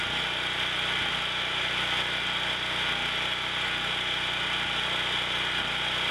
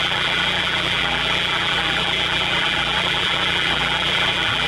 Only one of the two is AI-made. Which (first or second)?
second